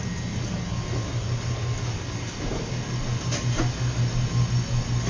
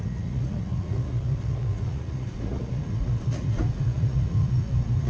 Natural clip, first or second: first